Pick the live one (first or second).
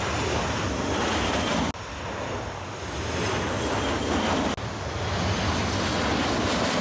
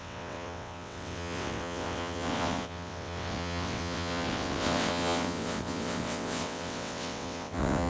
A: first